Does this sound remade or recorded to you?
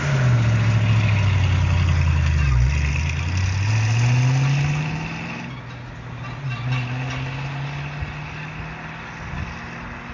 recorded